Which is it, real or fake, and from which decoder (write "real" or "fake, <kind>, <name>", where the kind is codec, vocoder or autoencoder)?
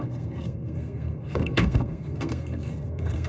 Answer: fake, codec, SNAC